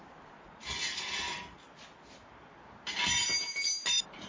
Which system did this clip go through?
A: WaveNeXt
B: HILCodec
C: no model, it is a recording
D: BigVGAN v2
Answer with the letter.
C